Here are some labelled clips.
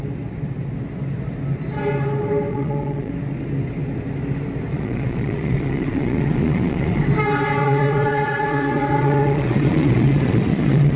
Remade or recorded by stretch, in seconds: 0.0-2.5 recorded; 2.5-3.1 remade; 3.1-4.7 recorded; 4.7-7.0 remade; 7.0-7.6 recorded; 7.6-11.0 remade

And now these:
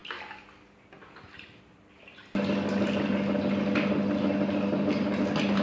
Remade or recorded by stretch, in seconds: 0.0-5.6 recorded

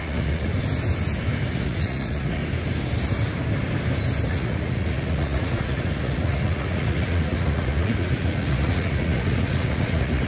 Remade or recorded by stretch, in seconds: 0.0-0.5 remade; 0.5-1.5 recorded; 1.5-2.4 remade; 2.4-4.3 recorded; 4.3-10.3 remade

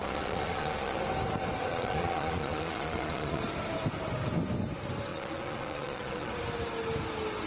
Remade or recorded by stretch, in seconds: 0.0-1.0 remade; 1.0-1.7 recorded; 1.7-3.4 remade; 3.4-5.1 recorded; 5.1-6.3 remade; 6.3-7.5 recorded

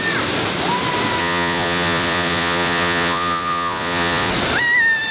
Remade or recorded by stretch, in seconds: 0.0-1.2 recorded; 1.2-4.3 remade; 4.3-5.1 recorded